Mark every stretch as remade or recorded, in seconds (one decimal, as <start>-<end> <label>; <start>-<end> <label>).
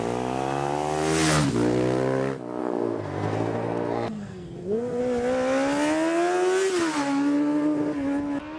0.0-2.6 recorded; 2.6-5.0 remade; 5.0-8.6 recorded